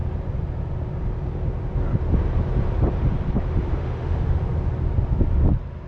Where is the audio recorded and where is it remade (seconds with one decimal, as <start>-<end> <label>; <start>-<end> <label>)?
0.0-3.5 recorded; 3.5-4.4 remade; 4.4-5.9 recorded